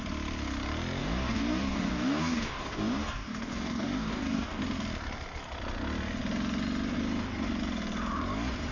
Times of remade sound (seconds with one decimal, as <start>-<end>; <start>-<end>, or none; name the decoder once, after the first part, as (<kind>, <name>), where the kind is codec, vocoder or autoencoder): 1.0-4.6 (codec, DAC)